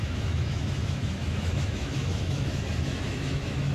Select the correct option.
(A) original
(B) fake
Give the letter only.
B